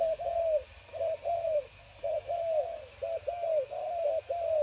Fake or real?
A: real